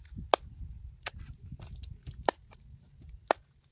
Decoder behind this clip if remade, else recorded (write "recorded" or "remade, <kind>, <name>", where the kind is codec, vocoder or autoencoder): recorded